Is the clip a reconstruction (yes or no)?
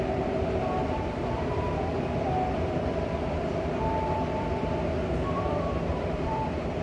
yes